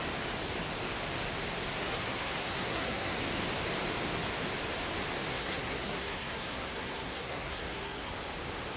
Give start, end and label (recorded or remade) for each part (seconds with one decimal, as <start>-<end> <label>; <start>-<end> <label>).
0.0-1.8 recorded; 1.8-3.2 remade; 3.2-5.3 recorded; 5.3-8.1 remade; 8.1-8.8 recorded